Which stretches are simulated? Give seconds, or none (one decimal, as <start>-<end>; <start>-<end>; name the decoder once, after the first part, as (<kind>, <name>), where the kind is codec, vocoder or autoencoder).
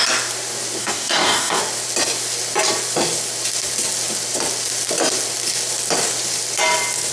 0.8-1.6 (codec, DAC)